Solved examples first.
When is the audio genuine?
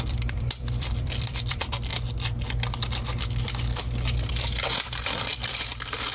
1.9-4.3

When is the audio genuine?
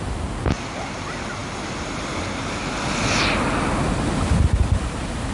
0.0-5.3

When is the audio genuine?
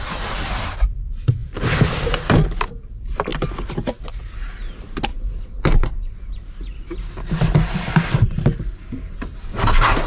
3.3-4.2; 5.1-7.3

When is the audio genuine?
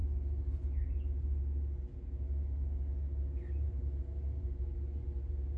0.0-3.4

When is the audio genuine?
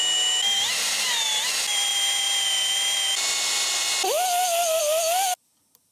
0.0-5.9